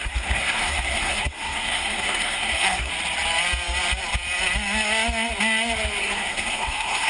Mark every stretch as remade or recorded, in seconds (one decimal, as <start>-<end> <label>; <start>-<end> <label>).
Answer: 0.0-2.9 remade; 2.9-6.0 recorded; 6.0-7.1 remade